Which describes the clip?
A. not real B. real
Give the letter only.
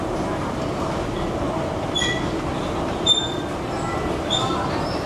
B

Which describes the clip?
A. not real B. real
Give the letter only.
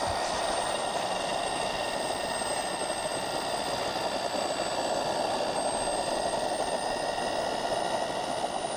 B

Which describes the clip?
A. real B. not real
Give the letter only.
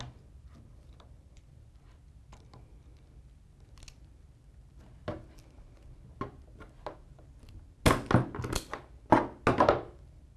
A